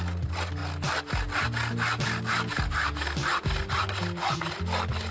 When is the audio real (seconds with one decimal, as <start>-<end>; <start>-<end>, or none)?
0.0-5.1